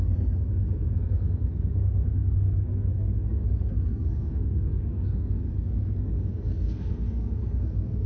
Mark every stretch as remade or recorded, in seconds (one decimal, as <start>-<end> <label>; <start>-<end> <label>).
0.0-8.1 remade